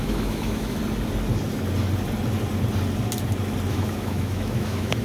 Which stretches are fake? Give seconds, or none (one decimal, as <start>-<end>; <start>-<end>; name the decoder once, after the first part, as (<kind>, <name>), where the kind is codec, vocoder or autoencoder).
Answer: 0.0-0.8 (autoencoder, DAC-VAE); 3.7-5.0